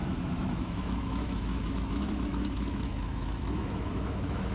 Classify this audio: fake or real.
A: fake